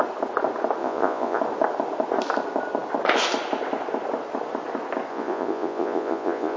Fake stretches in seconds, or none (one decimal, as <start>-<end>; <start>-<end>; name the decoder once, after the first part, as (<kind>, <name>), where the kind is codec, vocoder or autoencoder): 0.8-1.4 (vocoder, Vocos); 5.1-6.6